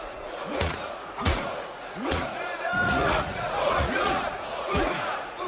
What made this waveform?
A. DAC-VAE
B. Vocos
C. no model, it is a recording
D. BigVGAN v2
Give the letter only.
B